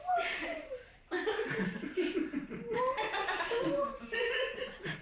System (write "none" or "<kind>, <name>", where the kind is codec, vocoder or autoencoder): vocoder, BigVGAN v2